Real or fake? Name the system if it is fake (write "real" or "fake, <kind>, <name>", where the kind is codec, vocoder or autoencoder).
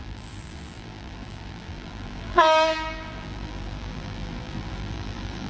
fake, vocoder, BigVGAN v2